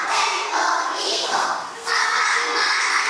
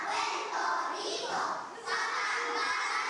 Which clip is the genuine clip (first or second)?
second